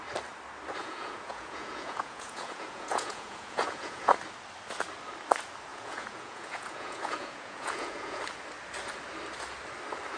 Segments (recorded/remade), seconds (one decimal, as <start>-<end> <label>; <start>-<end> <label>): 0.0-0.8 recorded; 0.8-4.1 remade; 4.1-5.7 recorded; 5.7-8.2 remade; 8.2-10.2 recorded